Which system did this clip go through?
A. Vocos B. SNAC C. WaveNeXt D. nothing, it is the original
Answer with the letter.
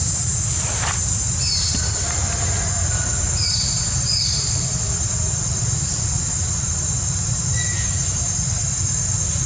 D